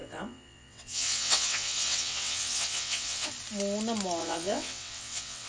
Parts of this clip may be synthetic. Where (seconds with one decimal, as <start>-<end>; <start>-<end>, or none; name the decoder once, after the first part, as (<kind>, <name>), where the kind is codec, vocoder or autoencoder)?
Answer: 0.0-3.3 (vocoder, WaveNeXt); 4.2-5.5